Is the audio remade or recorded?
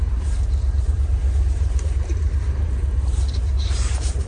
remade